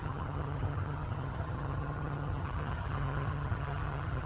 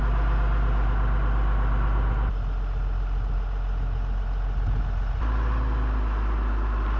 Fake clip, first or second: first